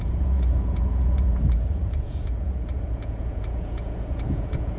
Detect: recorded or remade remade